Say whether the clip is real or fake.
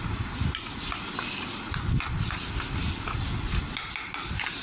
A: real